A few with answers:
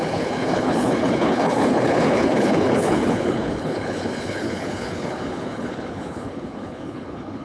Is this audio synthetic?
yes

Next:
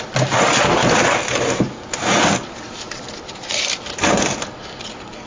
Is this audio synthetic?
no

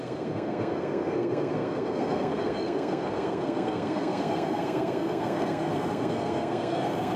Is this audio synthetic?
yes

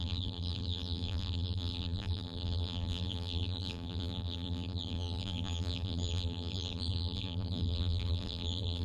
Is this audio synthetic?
yes